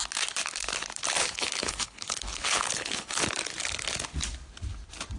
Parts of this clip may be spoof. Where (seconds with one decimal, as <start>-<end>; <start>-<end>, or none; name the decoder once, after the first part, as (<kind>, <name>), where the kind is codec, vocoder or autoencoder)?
1.2-3.3 (codec, HILCodec)